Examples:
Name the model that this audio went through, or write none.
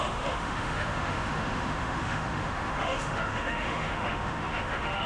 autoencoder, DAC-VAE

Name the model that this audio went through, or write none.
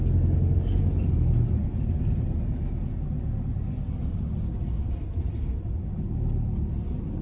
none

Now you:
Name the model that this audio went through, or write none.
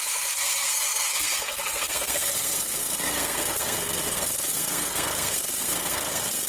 codec, SNAC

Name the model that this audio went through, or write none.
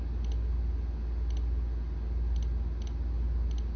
none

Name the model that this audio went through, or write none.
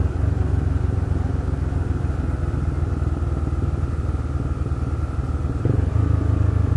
none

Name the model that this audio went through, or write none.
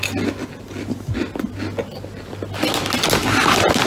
none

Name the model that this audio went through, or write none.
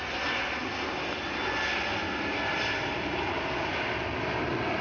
none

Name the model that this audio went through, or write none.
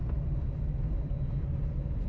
none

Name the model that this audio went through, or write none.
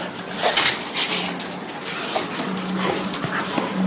none